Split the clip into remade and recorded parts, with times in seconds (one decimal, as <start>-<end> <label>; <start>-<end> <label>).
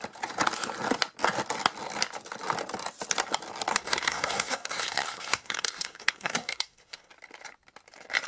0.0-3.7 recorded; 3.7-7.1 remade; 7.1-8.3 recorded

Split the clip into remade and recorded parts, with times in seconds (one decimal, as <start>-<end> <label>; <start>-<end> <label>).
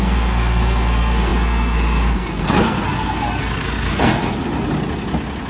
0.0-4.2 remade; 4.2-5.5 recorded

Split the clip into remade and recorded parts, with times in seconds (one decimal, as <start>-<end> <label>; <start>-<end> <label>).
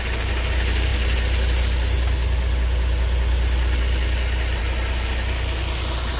0.0-6.2 recorded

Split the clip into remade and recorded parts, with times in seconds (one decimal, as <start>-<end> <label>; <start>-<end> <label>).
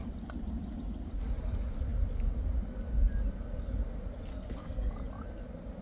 0.0-4.3 recorded; 4.3-4.9 remade; 4.9-5.8 recorded